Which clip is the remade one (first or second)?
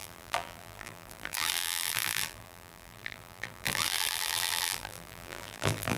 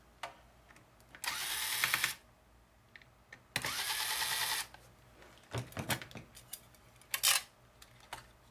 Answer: first